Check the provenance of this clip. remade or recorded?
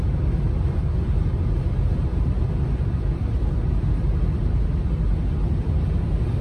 recorded